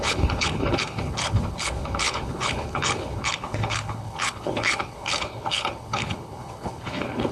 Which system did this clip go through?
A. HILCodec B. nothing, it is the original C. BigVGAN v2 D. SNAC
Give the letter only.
A